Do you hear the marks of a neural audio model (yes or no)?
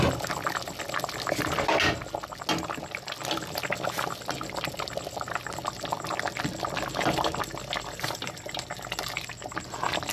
no